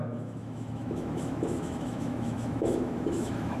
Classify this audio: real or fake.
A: fake